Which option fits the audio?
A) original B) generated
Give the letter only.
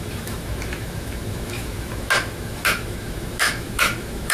B